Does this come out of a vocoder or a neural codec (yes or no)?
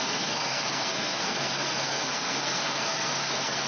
yes